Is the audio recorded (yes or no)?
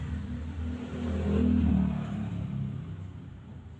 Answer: yes